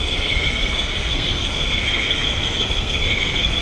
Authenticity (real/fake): fake